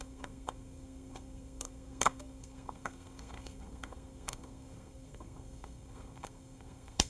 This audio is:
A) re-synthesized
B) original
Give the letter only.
A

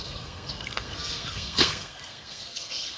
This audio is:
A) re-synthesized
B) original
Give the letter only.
A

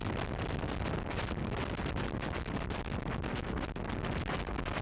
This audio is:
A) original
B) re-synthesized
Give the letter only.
A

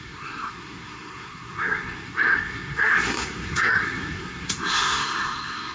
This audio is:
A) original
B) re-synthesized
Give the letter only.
B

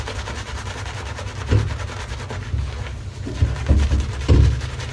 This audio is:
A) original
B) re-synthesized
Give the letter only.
A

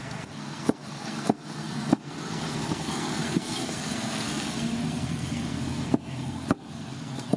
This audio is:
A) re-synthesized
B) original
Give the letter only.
A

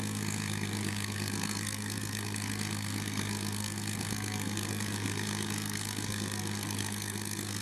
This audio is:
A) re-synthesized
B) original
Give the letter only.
A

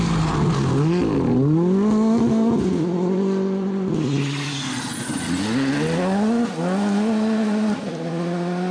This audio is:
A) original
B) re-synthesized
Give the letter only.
A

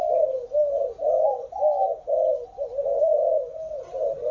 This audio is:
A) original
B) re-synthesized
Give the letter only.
A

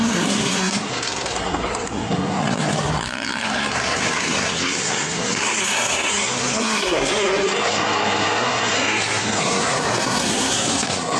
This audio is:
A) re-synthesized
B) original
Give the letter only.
A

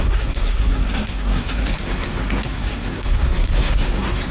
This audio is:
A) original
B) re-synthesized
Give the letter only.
B